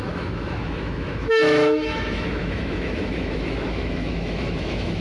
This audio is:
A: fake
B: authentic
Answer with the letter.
A